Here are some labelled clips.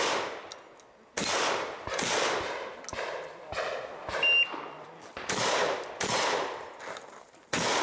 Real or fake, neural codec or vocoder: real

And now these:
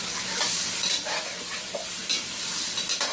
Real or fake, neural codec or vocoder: fake, vocoder, BigVGAN v2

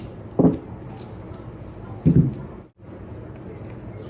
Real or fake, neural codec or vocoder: real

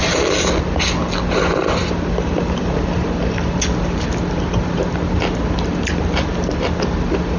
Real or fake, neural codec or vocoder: real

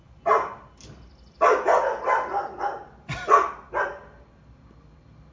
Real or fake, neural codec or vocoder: real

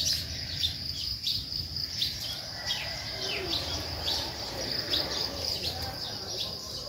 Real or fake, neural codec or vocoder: fake, vocoder, BigVGAN v2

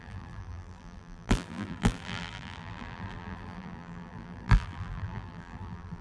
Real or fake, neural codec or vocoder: fake, vocoder, BigVGAN v2